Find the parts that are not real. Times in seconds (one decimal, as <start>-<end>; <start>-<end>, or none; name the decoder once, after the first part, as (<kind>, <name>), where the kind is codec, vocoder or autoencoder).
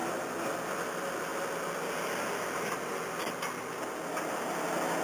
none